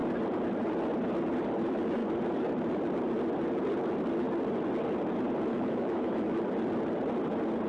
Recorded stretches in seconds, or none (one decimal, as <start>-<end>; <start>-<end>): 0.0-5.5; 6.4-7.7

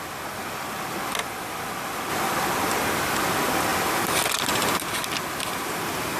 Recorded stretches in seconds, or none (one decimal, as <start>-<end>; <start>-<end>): 0.0-6.2

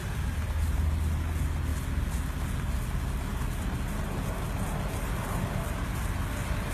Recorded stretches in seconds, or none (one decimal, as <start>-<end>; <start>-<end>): 0.0-6.7

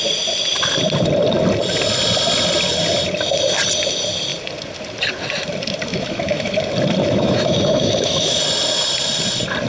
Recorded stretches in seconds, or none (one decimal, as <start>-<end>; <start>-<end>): 0.0-5.9; 6.5-7.0; 8.4-9.7

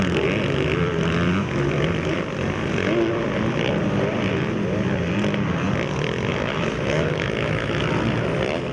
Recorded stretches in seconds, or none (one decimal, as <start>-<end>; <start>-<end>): 0.0-6.3; 7.8-8.7